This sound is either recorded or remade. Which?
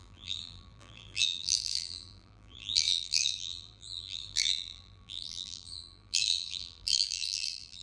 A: remade